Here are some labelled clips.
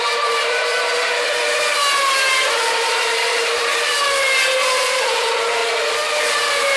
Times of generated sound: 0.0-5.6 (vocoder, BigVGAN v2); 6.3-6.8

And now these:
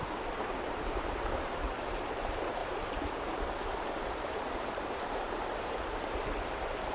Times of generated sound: 0.0-6.9 (vocoder, BigVGAN v2)

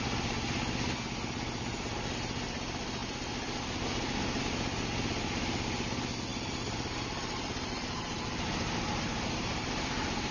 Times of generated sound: 6.3-10.3 (vocoder, BigVGAN v2)

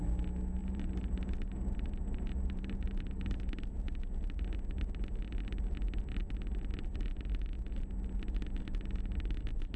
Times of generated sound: 0.6-3.6 (vocoder, BigVGAN v2)

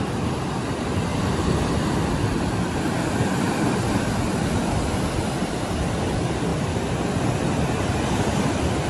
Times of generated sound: 0.0-8.9 (vocoder, BigVGAN v2)